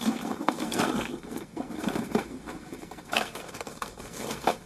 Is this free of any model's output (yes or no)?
no